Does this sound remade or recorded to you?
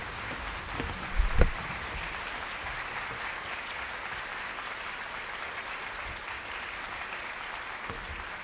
recorded